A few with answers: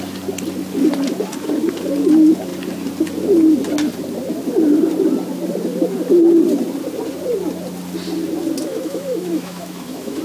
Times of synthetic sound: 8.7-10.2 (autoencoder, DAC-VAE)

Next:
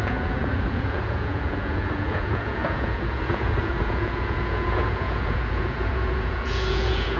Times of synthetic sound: 0.0-7.2 (vocoder, Vocos)

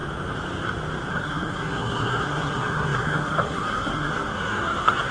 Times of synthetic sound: 1.1-5.1 (codec, SNAC)

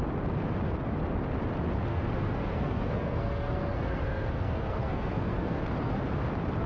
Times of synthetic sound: 1.9-5.6 (codec, SNAC)

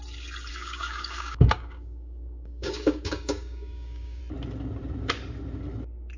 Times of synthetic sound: 0.5-4.2 (codec, DAC)